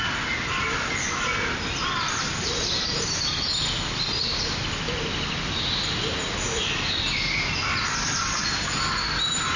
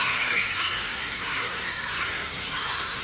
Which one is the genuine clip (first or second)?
first